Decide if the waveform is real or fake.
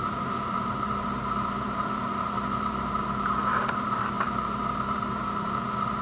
fake